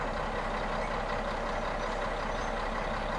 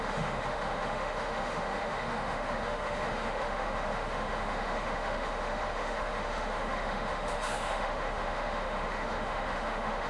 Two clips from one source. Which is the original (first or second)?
first